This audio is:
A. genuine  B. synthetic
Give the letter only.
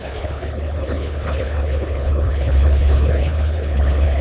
B